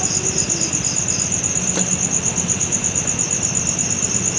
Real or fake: real